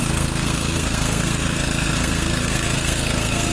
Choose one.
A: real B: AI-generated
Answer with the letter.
B